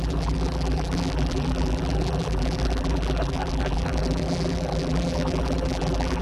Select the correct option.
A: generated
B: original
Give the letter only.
A